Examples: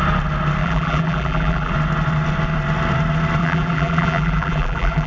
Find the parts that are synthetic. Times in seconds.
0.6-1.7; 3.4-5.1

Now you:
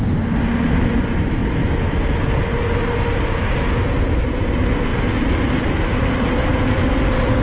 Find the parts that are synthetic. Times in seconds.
0.0-1.4; 4.0-4.9; 5.6-7.4

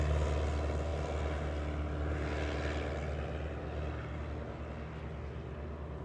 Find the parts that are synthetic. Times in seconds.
none